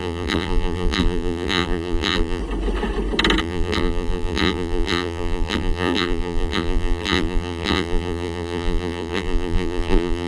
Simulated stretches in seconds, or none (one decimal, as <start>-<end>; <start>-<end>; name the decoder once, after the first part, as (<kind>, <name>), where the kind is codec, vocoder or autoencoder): 0.0-2.4 (vocoder, BigVGAN v2); 3.4-10.3